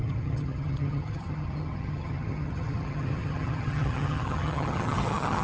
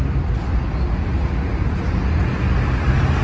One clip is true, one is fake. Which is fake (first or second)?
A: first